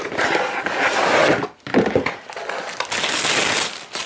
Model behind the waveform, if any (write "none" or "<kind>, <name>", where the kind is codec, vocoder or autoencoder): none